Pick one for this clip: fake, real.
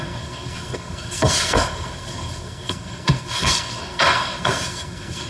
fake